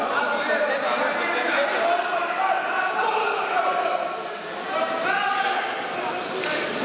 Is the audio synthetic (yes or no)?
no